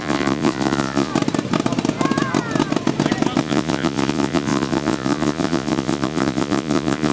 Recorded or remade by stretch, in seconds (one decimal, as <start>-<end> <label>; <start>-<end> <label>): 0.0-1.1 remade; 1.1-3.4 recorded; 3.4-7.1 remade